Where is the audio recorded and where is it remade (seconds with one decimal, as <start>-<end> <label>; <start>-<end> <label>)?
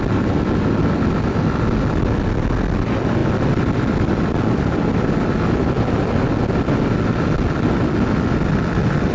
0.0-9.1 recorded